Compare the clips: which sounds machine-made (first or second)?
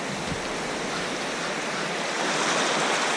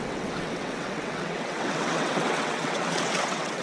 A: second